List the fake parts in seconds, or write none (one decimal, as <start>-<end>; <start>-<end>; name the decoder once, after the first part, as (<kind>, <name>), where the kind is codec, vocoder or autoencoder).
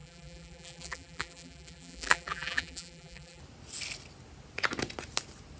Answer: 0.0-3.4 (vocoder, BigVGAN v2)